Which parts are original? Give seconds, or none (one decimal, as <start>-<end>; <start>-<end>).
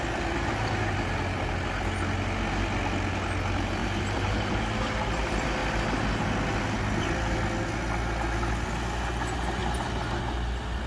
0.0-3.8; 4.6-10.9